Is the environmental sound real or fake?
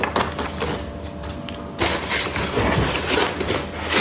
real